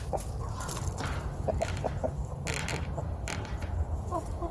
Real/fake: real